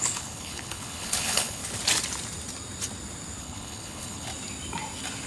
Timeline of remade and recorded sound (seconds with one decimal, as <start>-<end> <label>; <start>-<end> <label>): 0.0-1.6 remade; 1.6-3.4 recorded; 3.4-4.3 remade; 4.3-5.3 recorded